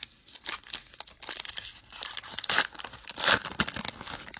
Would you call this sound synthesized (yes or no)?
no